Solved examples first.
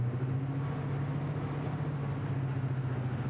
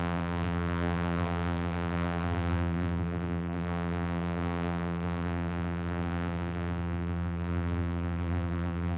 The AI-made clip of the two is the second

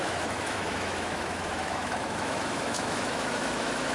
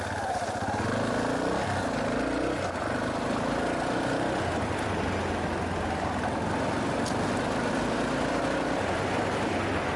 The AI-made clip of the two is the first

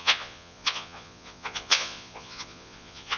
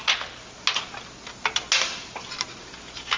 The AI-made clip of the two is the first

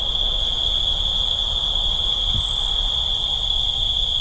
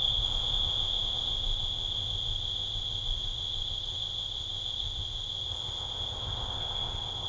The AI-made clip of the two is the second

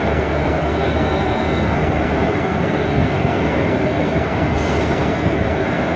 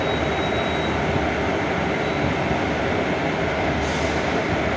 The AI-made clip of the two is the first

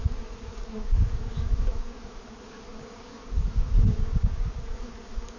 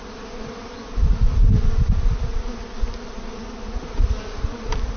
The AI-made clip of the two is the first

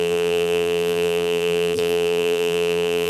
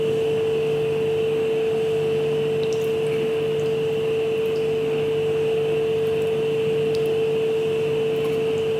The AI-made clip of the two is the first